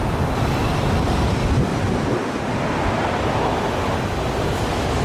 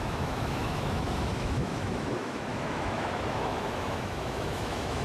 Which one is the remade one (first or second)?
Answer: second